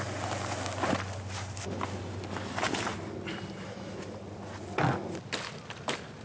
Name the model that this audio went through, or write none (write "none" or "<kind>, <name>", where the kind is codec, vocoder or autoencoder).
none